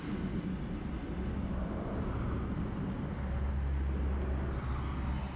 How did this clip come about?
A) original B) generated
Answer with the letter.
A